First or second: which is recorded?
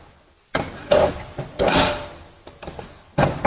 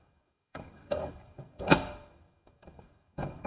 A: first